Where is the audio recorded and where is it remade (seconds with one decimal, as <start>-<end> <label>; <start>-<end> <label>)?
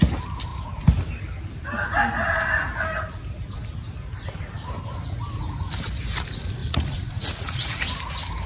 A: 0.0-6.6 recorded; 6.6-7.8 remade; 7.8-8.5 recorded